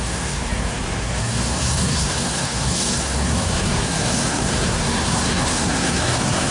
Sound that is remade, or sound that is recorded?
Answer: remade